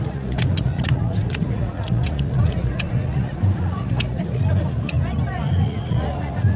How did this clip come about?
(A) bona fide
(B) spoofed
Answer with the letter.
B